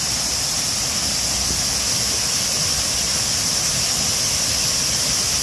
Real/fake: real